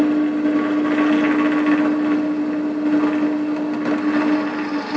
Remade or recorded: recorded